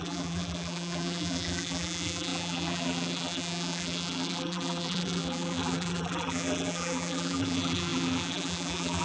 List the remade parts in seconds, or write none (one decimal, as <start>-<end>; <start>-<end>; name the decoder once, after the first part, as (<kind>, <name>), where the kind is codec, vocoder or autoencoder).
0.0-9.0 (vocoder, BigVGAN v2)